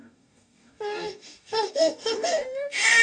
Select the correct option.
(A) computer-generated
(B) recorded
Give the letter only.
A